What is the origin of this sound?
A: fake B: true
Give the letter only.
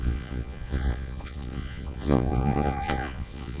A